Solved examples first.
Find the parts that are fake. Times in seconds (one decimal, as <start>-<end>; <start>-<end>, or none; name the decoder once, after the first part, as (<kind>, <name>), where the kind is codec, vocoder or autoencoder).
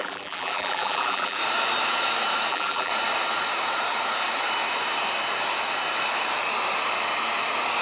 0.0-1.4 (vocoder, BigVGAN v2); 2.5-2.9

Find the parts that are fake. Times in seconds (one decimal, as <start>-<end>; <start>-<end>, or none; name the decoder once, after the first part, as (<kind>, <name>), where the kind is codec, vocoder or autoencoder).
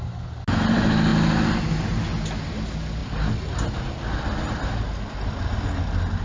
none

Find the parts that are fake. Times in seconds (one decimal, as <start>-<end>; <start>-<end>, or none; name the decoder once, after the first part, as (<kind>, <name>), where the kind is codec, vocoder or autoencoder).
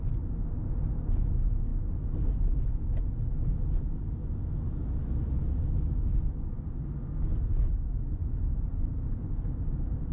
none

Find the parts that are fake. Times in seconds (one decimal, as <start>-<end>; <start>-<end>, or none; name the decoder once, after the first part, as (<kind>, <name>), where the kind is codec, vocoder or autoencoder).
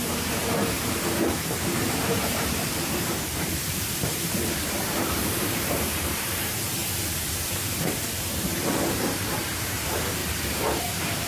0.0-6.8 (vocoder, BigVGAN v2); 7.5-10.2; 10.8-11.3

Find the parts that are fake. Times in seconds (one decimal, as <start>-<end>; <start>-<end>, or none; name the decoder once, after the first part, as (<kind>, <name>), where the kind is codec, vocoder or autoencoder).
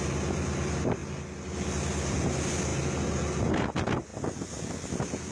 none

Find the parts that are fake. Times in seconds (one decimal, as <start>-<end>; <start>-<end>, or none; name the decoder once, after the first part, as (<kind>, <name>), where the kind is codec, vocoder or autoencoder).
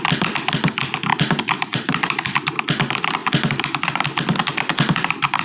1.1-2.6 (vocoder, BigVGAN v2)